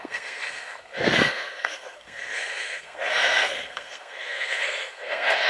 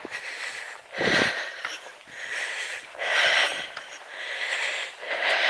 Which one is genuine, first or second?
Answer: second